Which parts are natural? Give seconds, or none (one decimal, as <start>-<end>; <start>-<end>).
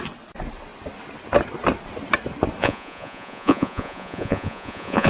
0.0-2.6